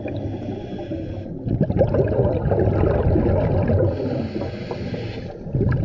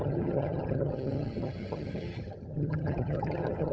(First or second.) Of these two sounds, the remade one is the second